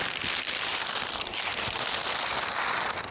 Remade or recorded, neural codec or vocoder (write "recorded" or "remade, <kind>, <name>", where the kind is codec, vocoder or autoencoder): remade, vocoder, BigVGAN v2